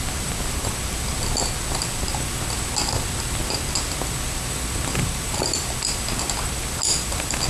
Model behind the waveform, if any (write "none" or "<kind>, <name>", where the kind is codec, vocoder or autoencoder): none